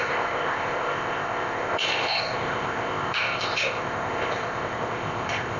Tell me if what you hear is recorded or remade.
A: remade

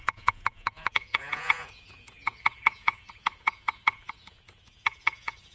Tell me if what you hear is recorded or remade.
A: remade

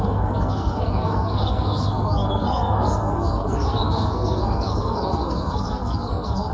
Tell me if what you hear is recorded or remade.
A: remade